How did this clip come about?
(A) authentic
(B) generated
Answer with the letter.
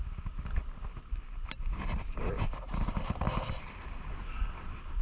B